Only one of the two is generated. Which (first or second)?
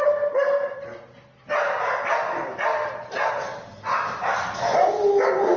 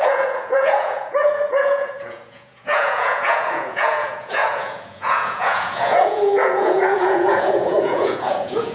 second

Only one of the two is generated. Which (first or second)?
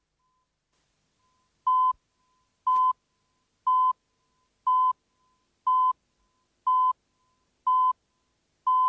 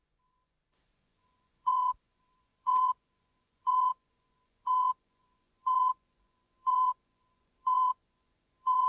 second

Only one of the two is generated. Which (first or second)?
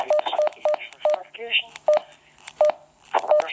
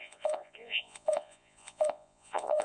second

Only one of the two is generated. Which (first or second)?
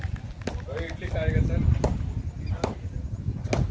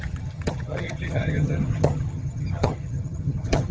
second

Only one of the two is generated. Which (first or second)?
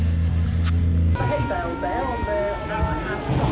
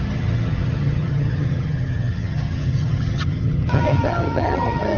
second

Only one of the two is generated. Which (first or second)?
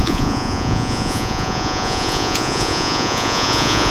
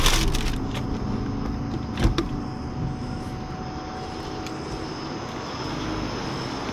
first